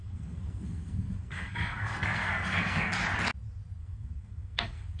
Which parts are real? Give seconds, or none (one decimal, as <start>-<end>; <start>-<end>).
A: 3.0-3.8

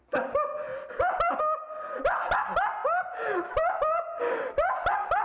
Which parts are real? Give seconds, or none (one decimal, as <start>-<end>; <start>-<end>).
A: 0.0-5.2

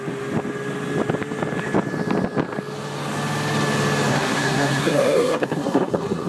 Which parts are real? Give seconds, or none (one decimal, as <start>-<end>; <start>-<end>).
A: 0.0-4.1

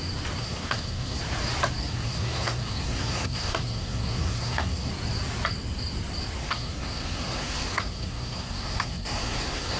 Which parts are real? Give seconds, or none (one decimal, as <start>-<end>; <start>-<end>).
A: 0.0-0.4; 1.2-1.8; 4.9-6.4

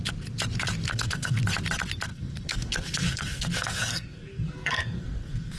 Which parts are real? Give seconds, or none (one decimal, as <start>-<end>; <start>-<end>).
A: 0.0-0.9; 1.4-2.1